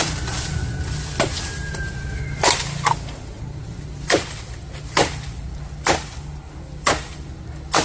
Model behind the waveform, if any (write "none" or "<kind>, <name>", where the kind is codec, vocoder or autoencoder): none